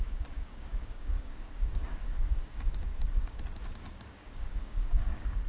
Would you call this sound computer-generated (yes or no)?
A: yes